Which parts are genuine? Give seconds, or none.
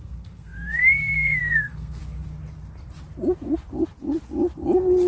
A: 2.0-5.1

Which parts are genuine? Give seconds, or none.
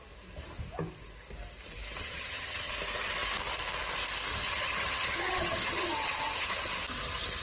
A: 0.0-2.0; 2.7-4.3; 6.7-7.4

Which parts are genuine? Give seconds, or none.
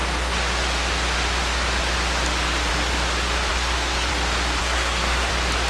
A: 0.0-3.5; 4.1-4.6; 5.3-5.7